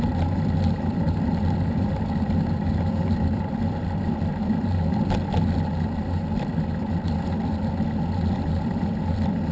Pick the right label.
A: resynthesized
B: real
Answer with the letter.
A